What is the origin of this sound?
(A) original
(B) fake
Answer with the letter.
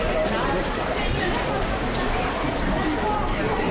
A